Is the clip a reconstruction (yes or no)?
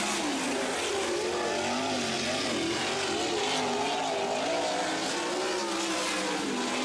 no